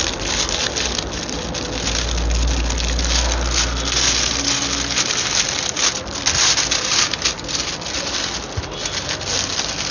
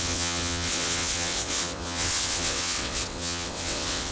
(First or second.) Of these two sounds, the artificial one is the second